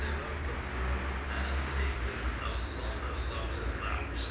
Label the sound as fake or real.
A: real